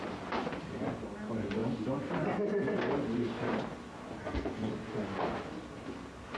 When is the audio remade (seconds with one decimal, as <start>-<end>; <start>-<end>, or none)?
4.2-4.7